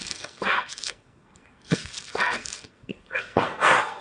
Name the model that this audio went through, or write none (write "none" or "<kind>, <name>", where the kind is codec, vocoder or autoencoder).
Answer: codec, SNAC